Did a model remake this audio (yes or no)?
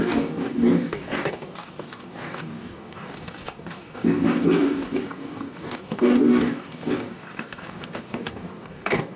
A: yes